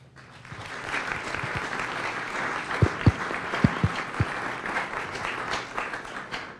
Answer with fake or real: real